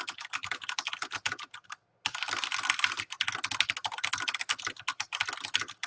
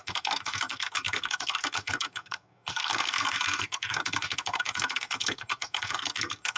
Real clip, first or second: first